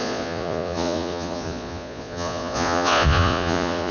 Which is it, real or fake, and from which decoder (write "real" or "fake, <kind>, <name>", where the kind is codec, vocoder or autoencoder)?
fake, vocoder, Vocos